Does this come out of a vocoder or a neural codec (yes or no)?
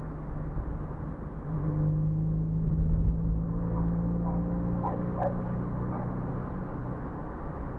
no